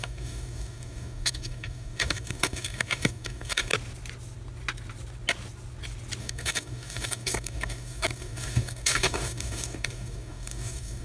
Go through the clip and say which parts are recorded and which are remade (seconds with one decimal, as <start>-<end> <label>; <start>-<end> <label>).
0.0-3.7 remade; 3.7-6.2 recorded; 6.2-11.0 remade